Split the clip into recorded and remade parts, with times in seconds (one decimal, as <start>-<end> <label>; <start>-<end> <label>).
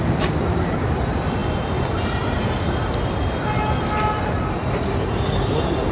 0.0-5.9 recorded